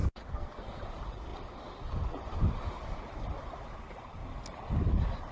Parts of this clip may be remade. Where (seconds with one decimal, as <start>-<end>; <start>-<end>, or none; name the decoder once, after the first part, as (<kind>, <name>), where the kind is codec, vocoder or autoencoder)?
0.0-0.8 (codec, SNAC)